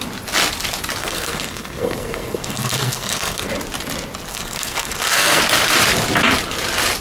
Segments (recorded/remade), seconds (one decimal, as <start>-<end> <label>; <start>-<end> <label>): 0.0-1.0 recorded; 1.0-3.5 remade; 3.5-4.3 recorded; 4.3-5.4 remade; 5.4-7.0 recorded